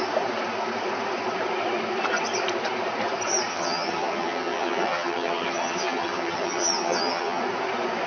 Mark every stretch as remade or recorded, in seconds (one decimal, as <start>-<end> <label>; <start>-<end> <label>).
0.0-3.5 recorded; 3.5-7.4 remade; 7.4-8.1 recorded